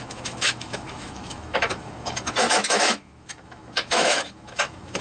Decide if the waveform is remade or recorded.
remade